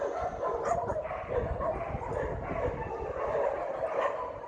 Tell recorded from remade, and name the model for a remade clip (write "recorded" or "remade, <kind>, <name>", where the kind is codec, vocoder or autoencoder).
recorded